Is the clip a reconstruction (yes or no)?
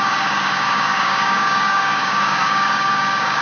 yes